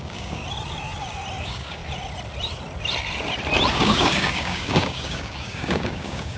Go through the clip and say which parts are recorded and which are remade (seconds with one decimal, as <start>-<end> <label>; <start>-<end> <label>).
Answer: 0.0-0.4 remade; 0.4-1.4 recorded; 1.4-1.8 remade; 1.8-3.7 recorded; 3.7-6.4 remade